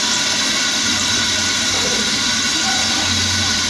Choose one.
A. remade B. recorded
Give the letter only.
B